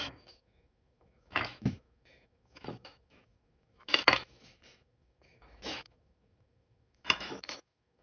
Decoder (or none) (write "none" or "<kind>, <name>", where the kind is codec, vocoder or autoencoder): autoencoder, DAC-VAE